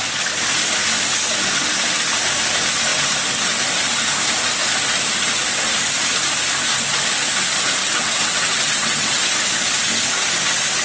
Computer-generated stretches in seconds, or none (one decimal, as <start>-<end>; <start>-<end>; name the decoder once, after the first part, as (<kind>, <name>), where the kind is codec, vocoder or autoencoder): 7.8-9.2 (vocoder, WaveNeXt)